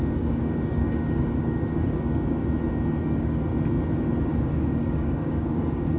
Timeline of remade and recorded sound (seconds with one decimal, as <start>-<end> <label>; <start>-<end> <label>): 0.0-2.4 remade; 2.4-3.0 recorded; 3.0-3.5 remade; 3.5-4.4 recorded; 4.4-6.0 remade